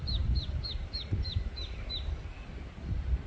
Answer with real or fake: fake